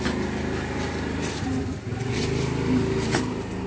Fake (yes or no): no